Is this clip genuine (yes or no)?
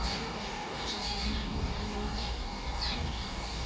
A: no